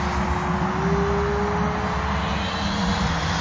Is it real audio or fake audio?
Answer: real